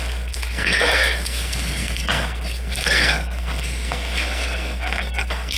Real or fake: fake